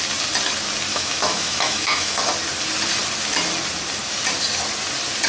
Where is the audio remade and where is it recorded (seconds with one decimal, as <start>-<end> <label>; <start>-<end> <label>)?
0.0-0.9 recorded; 0.9-2.2 remade; 2.2-5.3 recorded